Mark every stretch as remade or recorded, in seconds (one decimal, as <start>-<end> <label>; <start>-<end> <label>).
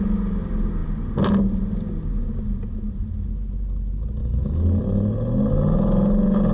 0.0-4.2 recorded; 4.2-4.8 remade; 4.8-6.5 recorded